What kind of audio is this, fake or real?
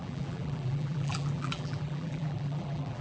fake